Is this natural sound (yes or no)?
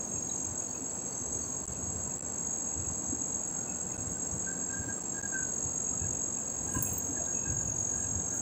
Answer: yes